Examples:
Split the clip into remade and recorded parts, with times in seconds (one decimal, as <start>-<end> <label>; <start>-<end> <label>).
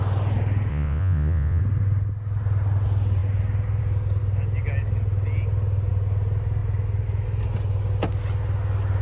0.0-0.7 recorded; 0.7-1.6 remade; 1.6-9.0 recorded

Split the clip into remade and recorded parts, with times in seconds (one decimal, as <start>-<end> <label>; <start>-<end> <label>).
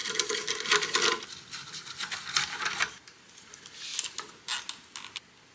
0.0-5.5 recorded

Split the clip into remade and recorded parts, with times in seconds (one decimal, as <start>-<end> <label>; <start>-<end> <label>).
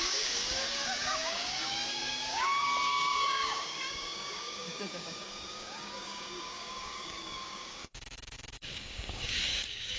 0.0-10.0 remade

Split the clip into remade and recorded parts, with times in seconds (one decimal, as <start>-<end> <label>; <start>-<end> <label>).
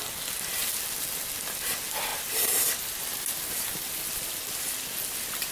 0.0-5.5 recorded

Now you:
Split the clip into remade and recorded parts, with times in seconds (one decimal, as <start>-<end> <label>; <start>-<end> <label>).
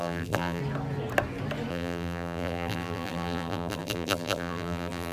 0.0-0.6 remade; 0.6-1.7 recorded; 1.7-5.1 remade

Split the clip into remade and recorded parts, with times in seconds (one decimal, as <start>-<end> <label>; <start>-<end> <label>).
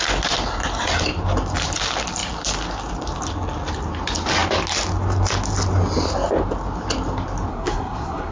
0.0-7.5 recorded; 7.5-8.3 remade